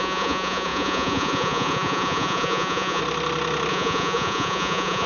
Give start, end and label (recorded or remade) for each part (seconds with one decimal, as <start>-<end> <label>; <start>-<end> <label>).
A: 0.0-3.0 remade; 3.0-3.7 recorded; 3.7-5.1 remade